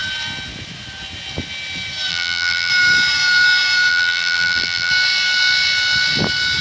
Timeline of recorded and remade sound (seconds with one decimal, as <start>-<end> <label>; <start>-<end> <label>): 0.0-2.1 recorded; 2.1-2.7 remade; 2.7-3.9 recorded; 3.9-4.9 remade; 4.9-6.6 recorded